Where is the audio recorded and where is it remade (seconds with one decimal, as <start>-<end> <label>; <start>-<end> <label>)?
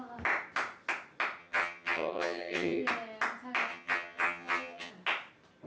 0.0-1.4 recorded; 1.4-2.8 remade; 2.8-3.7 recorded; 3.7-4.9 remade; 4.9-5.7 recorded